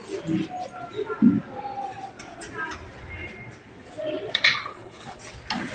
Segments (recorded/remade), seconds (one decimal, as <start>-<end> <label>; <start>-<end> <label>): 0.0-4.7 recorded; 4.7-5.2 remade; 5.2-5.7 recorded